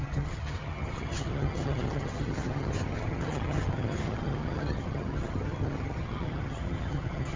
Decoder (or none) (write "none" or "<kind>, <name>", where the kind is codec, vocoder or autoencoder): vocoder, HiFi-GAN